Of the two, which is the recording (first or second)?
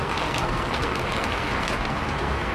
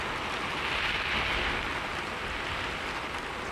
second